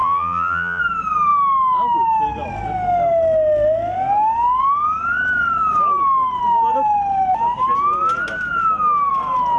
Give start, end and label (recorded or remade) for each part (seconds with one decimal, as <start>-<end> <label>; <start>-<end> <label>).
0.0-0.8 remade; 0.8-9.6 recorded